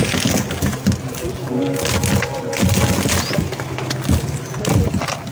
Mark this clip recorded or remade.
recorded